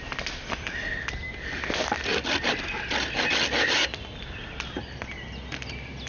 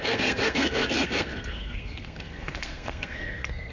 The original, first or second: first